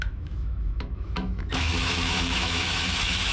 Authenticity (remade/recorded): remade